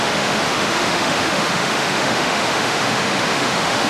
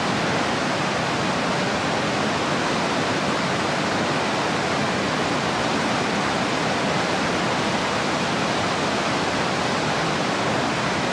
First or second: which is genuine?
second